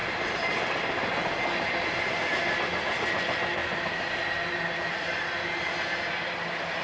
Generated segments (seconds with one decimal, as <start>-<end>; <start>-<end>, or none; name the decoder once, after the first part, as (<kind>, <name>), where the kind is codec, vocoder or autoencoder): none